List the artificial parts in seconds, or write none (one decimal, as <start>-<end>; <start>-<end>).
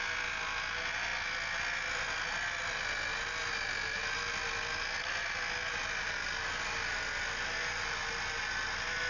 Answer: none